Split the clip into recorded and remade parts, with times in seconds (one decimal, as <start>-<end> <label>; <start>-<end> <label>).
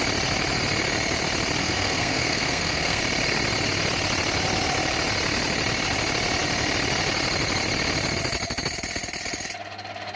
0.0-1.6 recorded; 1.6-3.0 remade; 3.0-10.2 recorded